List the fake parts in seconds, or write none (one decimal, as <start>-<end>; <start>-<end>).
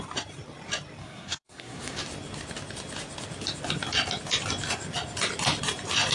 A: 1.0-2.0